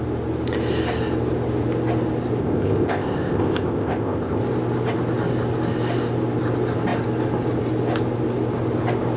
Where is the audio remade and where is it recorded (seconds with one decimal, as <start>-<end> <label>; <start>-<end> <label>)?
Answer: 0.0-2.4 recorded; 2.4-4.4 remade; 4.4-9.2 recorded